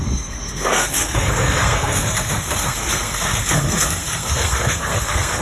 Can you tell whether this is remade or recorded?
remade